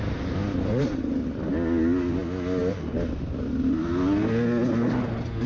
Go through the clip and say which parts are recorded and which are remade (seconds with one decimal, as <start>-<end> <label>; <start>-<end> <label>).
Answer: 0.0-0.4 recorded; 0.4-1.0 remade; 1.0-5.5 recorded